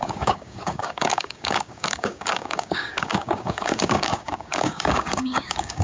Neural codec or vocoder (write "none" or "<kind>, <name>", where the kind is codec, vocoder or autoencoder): codec, DAC